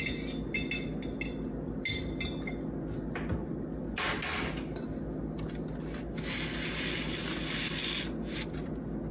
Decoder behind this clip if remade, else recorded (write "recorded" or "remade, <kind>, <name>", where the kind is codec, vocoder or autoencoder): recorded